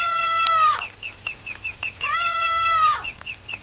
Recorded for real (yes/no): no